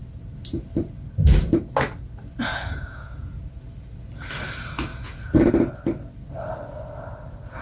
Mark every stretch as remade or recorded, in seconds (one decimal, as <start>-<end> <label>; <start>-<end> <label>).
0.0-2.5 recorded; 2.5-3.6 remade; 3.6-4.9 recorded; 4.9-5.5 remade; 5.5-7.6 recorded